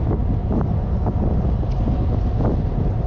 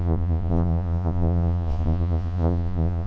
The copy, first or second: second